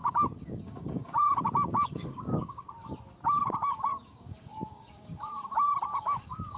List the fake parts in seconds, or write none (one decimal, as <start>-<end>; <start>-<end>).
0.0-2.7; 3.4-5.3; 5.9-6.6